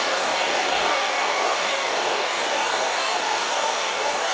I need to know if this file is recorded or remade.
remade